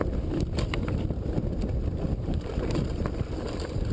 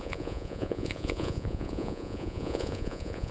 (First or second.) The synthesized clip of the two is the second